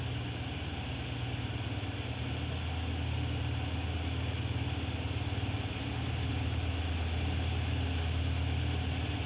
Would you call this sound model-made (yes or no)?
no